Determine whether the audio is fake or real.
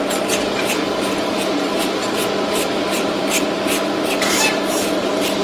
fake